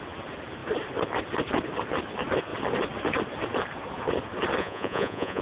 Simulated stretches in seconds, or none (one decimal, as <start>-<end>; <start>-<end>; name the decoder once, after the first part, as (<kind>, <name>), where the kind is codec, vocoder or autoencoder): 4.6-5.4 (vocoder, Vocos)